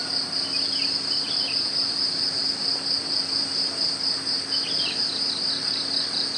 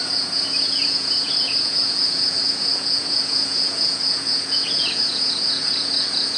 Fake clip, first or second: second